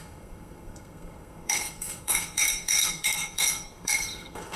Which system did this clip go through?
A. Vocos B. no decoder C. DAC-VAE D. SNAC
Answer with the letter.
D